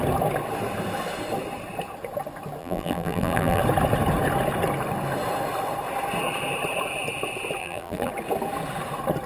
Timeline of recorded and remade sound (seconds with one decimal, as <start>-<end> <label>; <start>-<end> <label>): 0.0-2.6 recorded; 2.6-3.6 remade; 3.6-7.6 recorded; 7.6-8.1 remade; 8.1-9.3 recorded

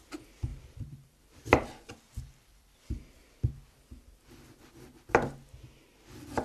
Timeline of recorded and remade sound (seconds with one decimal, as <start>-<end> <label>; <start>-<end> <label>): 0.0-0.5 recorded; 0.5-3.5 remade; 3.5-6.4 recorded